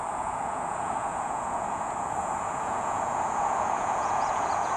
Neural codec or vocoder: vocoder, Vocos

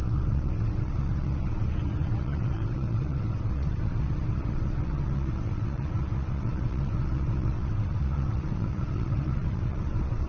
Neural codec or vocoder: vocoder, WaveNeXt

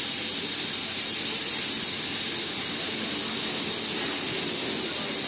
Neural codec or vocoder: none